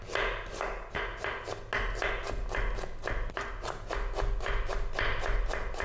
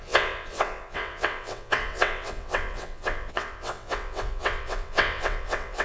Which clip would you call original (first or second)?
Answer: first